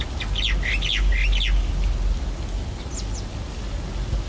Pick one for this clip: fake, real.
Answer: real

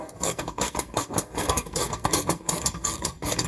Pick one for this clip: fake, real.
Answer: fake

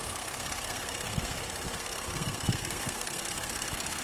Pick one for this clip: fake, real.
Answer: fake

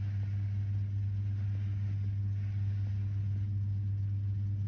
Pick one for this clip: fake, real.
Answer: real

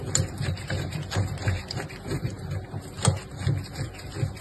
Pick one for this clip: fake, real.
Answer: real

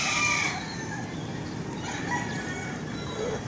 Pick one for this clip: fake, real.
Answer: real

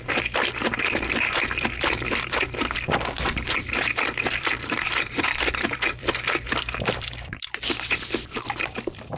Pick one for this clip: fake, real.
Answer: fake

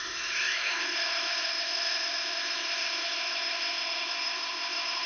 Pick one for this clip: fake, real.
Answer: fake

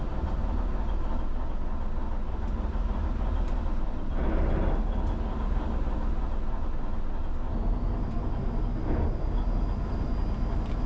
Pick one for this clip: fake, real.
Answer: real